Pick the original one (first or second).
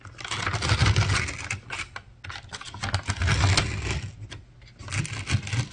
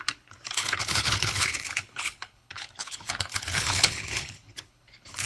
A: first